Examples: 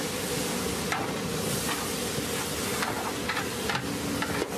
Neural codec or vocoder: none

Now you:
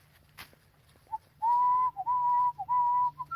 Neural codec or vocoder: none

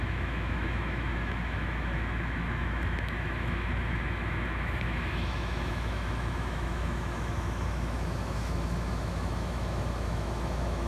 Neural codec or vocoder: autoencoder, DAC-VAE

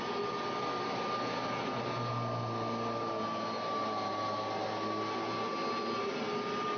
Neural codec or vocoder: none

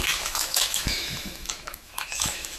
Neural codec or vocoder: autoencoder, DAC-VAE